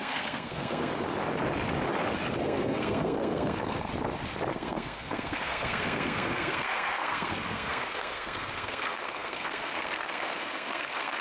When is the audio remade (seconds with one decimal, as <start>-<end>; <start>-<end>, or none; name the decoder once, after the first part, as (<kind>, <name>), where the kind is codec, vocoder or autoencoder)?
0.0-0.9 (codec, SNAC); 2.4-3.9; 4.5-11.2